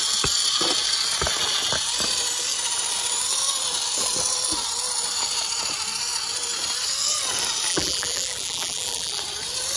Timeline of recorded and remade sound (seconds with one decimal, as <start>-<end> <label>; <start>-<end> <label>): 0.0-7.7 recorded; 7.7-9.2 remade; 9.2-9.8 recorded